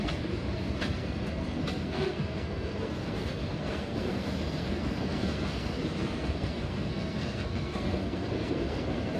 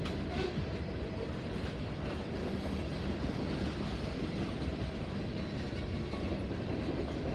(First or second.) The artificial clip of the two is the first